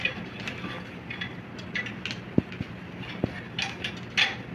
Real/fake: real